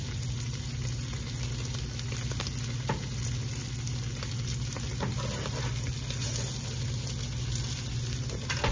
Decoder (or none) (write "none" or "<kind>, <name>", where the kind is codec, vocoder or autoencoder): none